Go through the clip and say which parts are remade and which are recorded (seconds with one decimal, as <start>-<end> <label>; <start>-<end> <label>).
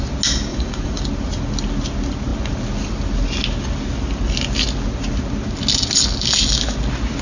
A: 0.0-0.5 recorded; 0.5-1.0 remade; 1.0-7.2 recorded